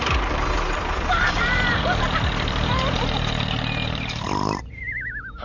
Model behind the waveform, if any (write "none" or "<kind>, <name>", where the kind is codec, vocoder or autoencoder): vocoder, BigVGAN v2